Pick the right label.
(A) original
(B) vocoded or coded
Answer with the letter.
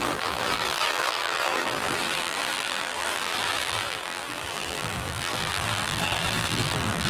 B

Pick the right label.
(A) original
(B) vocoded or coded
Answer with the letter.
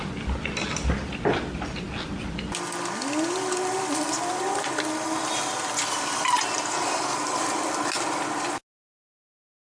A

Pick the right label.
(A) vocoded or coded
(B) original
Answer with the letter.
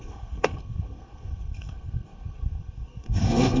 A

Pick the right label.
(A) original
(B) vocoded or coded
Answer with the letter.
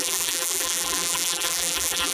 B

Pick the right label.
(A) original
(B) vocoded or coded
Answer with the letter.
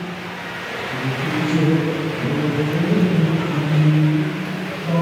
A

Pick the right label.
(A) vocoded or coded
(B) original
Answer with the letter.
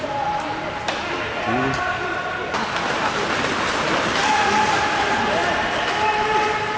B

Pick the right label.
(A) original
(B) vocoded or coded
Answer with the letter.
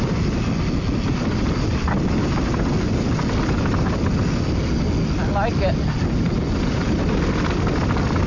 A